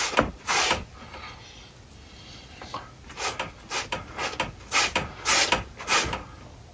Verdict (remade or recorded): recorded